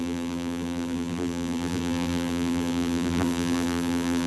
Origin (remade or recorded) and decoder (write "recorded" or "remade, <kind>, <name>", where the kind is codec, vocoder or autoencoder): remade, vocoder, BigVGAN v2